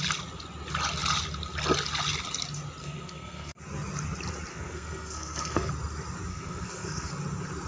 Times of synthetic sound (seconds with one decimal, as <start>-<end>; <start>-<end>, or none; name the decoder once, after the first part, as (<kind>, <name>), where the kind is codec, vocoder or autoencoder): 2.8-3.6 (codec, SNAC); 4.5-5.7; 6.3-7.1